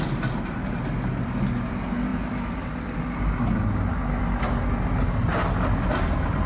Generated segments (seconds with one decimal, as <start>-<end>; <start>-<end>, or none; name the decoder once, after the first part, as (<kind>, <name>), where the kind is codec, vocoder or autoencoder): none